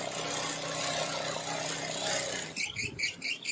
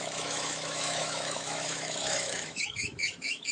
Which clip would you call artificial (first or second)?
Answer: second